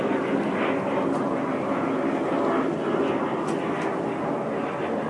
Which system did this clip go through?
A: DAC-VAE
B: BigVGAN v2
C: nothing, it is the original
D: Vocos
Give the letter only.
C